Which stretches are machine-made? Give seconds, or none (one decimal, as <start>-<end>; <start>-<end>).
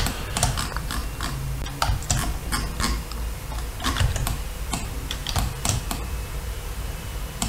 0.0-1.0; 3.8-7.5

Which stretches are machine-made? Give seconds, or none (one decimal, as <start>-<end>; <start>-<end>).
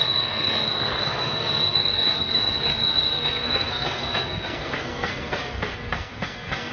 0.0-6.7